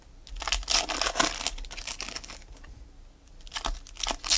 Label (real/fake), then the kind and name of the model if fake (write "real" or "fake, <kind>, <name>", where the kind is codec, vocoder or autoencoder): real